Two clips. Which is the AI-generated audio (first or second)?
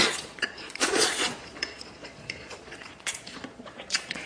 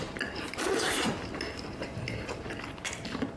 first